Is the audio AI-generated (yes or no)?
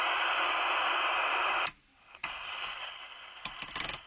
no